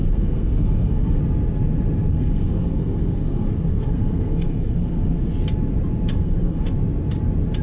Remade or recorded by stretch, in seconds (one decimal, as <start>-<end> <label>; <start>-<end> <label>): 0.0-1.2 remade; 1.2-2.1 recorded; 2.1-5.3 remade; 5.3-6.1 recorded; 6.1-6.7 remade; 6.7-7.6 recorded